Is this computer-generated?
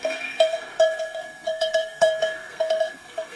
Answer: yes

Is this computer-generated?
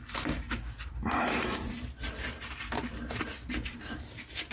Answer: no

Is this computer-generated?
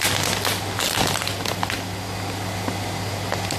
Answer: no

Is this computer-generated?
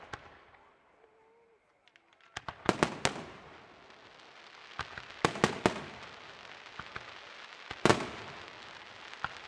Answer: no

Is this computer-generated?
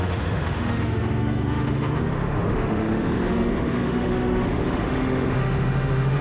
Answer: yes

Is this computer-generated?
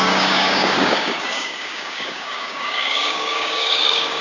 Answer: yes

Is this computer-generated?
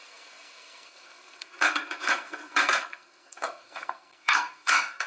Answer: yes